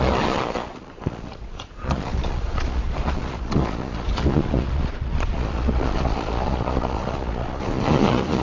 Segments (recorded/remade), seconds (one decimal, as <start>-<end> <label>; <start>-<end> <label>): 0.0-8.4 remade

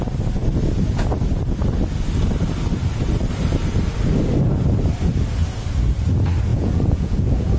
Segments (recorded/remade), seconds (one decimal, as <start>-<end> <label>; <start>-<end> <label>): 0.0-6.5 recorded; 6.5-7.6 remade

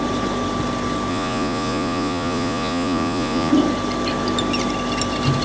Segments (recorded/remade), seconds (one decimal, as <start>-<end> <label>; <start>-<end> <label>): 0.0-1.1 recorded; 1.1-3.5 remade; 3.5-5.4 recorded